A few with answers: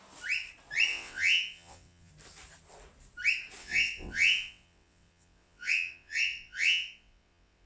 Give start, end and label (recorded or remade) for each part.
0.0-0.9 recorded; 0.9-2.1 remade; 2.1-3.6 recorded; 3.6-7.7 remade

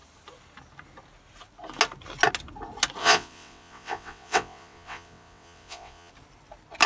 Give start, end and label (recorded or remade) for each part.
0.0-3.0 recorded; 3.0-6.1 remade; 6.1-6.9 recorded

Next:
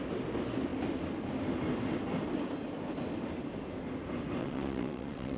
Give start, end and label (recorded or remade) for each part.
0.0-4.4 recorded; 4.4-5.4 remade

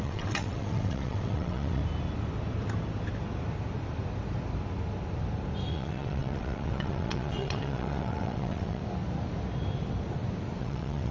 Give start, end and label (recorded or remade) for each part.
0.0-1.8 remade; 1.8-5.7 recorded; 5.7-8.8 remade; 8.8-10.6 recorded; 10.6-11.1 remade